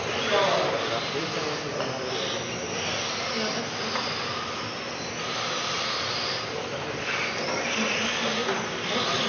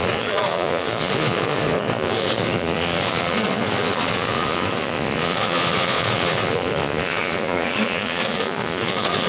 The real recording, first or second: first